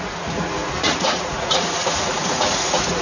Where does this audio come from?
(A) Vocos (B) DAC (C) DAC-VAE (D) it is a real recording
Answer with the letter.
A